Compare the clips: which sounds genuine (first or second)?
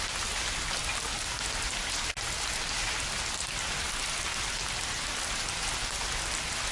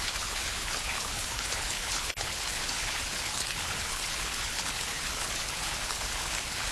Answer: first